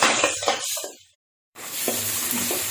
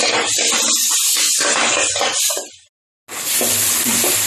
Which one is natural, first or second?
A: second